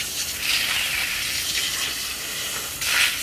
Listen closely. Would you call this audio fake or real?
real